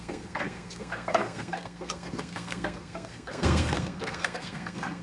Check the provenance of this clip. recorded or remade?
remade